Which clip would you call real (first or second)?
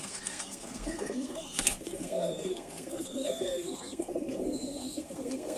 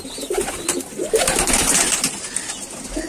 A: second